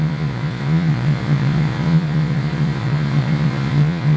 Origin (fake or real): fake